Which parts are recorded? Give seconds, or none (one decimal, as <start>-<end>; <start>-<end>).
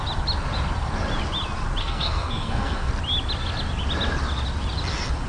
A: 0.0-1.8; 2.9-5.3